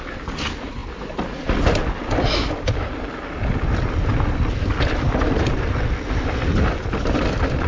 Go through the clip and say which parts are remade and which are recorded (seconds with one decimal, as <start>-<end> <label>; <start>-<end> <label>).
0.0-7.7 recorded